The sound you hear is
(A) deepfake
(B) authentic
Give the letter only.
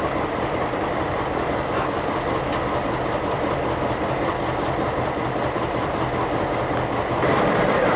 A